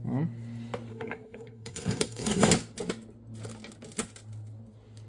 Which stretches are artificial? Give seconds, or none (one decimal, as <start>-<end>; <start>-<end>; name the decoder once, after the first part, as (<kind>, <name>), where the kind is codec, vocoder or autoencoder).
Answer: 0.9-2.5 (codec, SNAC)